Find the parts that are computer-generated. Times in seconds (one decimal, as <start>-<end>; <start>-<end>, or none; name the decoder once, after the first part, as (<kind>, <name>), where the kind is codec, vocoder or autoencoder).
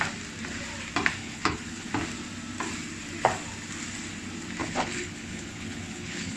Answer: 1.2-1.9 (codec, HILCodec); 4.6-6.4